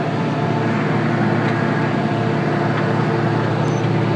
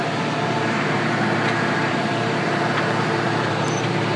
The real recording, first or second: first